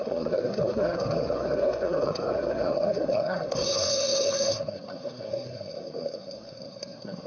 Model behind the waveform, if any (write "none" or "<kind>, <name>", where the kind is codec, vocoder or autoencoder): codec, SNAC